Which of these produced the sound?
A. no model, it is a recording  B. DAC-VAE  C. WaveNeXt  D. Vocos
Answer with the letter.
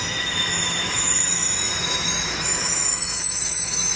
B